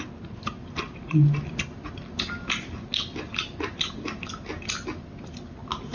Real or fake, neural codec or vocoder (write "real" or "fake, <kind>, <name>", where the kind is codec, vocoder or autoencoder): real